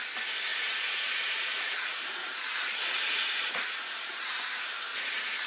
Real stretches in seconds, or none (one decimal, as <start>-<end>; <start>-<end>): 0.0-0.5; 3.8-4.9